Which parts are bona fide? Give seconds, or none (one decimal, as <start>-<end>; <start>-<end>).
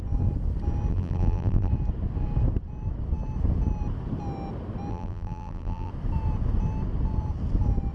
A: 0.0-0.9; 1.7-4.9; 5.9-7.9